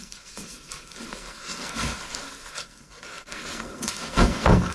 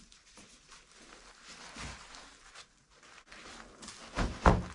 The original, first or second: second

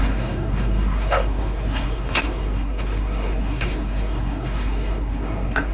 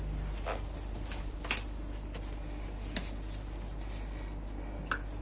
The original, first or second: second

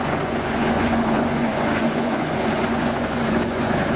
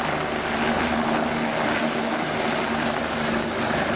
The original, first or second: second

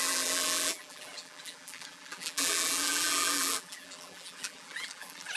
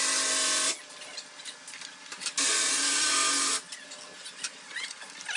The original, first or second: second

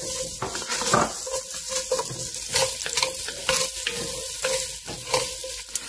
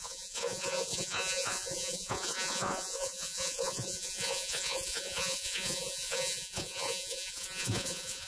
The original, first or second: first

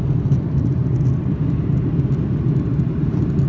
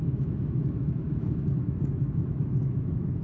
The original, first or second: first